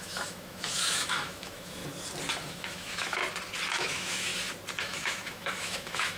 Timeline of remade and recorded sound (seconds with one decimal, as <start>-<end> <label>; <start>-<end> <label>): 0.0-1.8 remade; 1.8-2.5 recorded; 2.5-3.2 remade; 3.2-3.8 recorded; 3.8-4.3 remade; 4.3-4.8 recorded; 4.8-6.2 remade